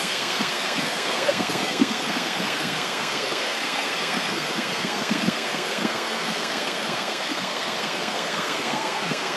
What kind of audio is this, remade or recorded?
remade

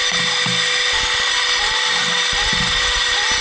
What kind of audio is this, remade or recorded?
recorded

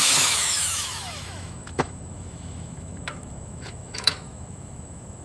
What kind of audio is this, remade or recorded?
remade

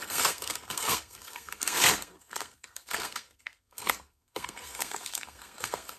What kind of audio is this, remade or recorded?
remade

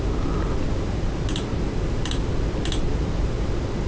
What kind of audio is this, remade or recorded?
recorded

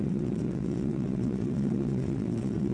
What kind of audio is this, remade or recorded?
remade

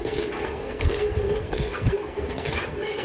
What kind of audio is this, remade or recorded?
remade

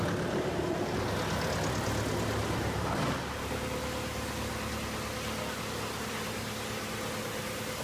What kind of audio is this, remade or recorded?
recorded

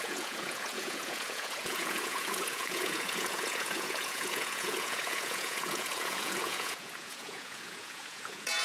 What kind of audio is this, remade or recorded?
remade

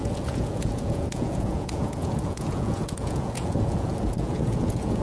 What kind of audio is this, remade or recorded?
remade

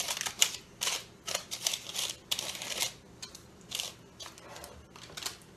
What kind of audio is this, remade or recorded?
recorded